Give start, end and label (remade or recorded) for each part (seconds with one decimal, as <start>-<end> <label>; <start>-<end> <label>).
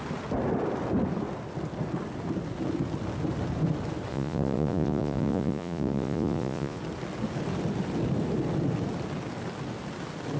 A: 0.0-4.1 recorded; 4.1-6.8 remade; 6.8-10.4 recorded